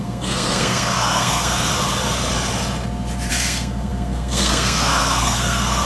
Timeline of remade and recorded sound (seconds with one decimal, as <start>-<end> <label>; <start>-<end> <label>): 0.0-1.7 remade; 1.7-3.3 recorded; 3.3-5.8 remade